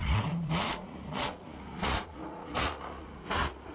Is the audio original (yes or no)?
no